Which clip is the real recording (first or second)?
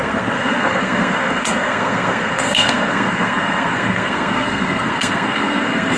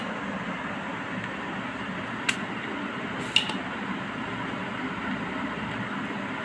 second